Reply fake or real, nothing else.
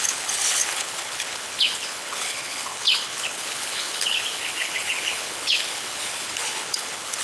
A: fake